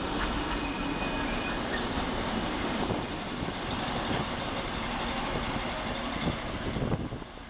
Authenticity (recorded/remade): recorded